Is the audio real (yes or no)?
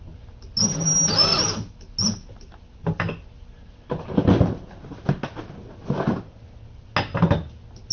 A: yes